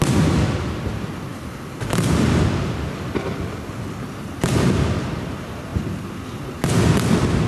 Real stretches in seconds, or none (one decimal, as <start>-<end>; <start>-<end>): 0.0-1.3; 4.5-7.5

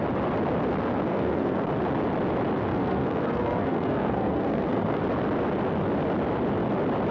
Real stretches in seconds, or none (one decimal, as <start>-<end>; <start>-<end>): 0.0-1.1; 1.7-2.7; 5.0-7.1

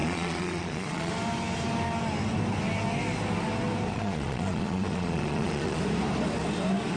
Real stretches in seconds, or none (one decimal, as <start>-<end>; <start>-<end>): 1.1-3.9; 5.8-7.0

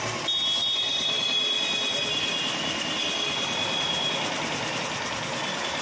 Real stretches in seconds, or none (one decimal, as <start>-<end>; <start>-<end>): 0.0-5.8

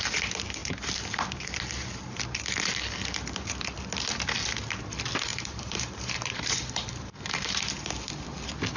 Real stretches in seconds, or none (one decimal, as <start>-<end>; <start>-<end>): 0.0-5.3; 7.9-8.8

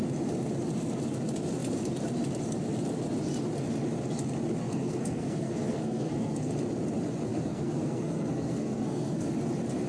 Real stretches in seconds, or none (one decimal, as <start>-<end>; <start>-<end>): 0.0-4.6; 6.5-7.3; 9.3-9.9

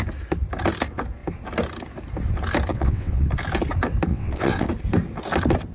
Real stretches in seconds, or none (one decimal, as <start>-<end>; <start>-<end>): 0.0-2.7; 3.3-4.1; 4.7-5.7